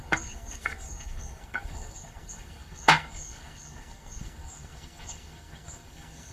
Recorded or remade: remade